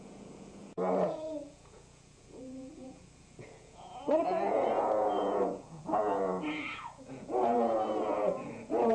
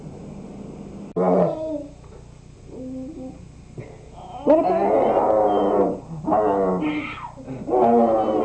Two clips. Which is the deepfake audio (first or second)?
first